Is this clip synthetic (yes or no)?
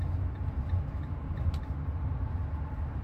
no